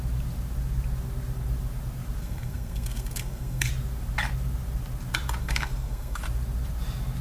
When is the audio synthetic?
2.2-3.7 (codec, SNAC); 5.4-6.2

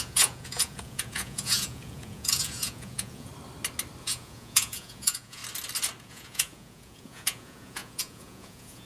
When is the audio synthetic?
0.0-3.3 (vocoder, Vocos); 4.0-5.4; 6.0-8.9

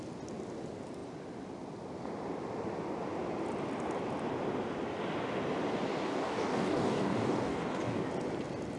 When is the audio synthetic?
6.1-8.1 (codec, DAC)

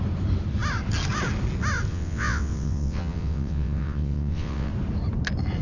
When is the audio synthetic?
1.9-4.7 (vocoder, WaveNeXt)

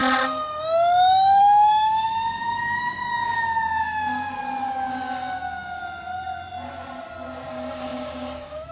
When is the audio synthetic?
1.4-3.0 (codec, DAC); 3.8-5.8; 7.5-8.7